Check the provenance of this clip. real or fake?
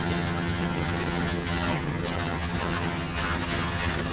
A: fake